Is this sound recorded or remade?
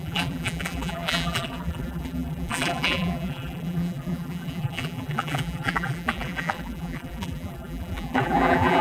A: remade